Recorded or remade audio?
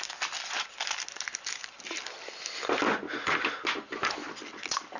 recorded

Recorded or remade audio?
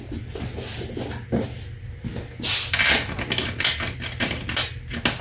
recorded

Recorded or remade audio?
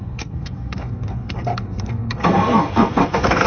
remade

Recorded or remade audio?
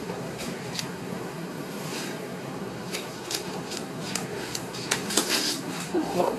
remade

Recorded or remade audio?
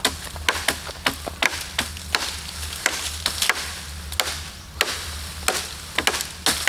recorded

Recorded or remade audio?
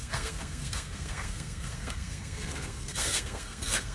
remade